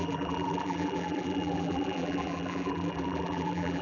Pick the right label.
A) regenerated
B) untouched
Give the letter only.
A